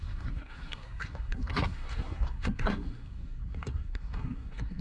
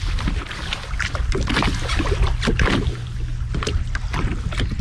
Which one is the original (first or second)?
second